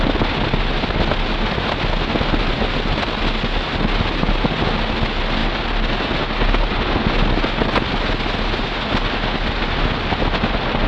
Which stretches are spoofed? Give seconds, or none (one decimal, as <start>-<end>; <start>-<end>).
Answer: none